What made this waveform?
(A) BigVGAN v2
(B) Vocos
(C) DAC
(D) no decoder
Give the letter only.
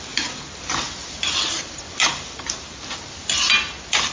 D